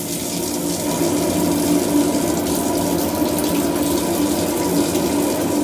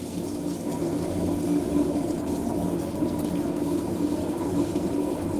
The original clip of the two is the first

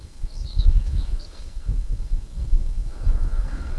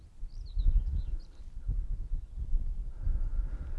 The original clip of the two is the second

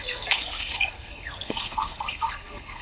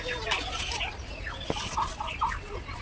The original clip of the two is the second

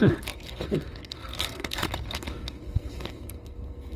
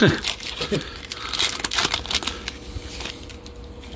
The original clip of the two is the second